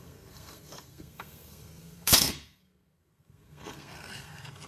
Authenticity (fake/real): fake